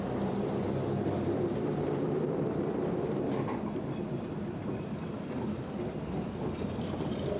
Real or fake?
fake